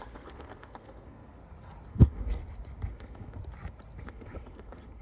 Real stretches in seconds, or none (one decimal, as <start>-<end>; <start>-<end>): 1.4-1.9; 2.4-2.9; 3.4-4.0